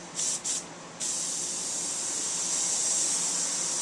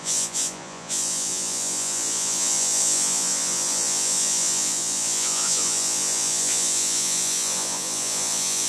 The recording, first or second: first